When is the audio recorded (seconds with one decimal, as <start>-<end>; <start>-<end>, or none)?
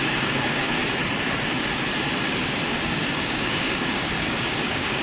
0.8-2.4